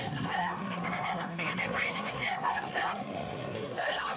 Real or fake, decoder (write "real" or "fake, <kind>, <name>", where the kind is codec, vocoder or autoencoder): fake, codec, SNAC